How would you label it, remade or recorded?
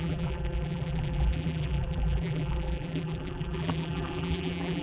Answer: remade